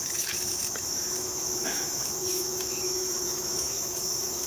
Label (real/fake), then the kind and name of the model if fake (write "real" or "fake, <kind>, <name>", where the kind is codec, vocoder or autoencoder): fake, autoencoder, DAC-VAE